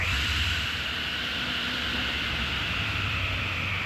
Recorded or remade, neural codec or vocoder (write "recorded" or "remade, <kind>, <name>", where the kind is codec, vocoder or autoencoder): remade, vocoder, BigVGAN v2